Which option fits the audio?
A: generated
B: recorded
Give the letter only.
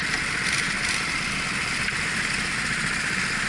B